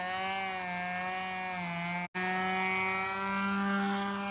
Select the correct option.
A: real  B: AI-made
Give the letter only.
A